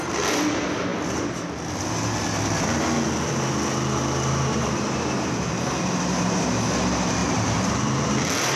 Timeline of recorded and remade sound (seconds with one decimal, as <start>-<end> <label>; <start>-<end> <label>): 0.0-7.2 recorded; 7.2-8.1 remade; 8.1-8.6 recorded